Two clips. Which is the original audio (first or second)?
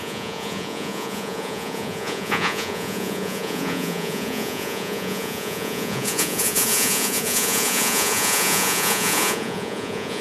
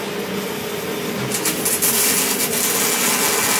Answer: second